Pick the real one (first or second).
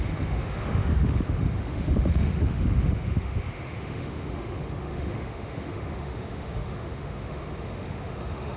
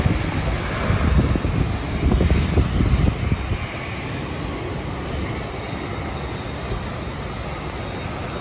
second